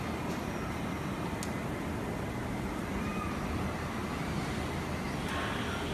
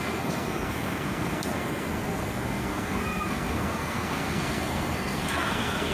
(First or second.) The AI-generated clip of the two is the second